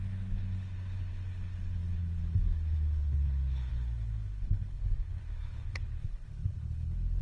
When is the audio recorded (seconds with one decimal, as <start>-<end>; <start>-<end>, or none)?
none